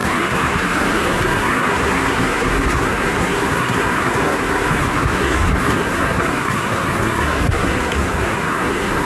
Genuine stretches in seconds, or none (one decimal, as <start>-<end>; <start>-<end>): none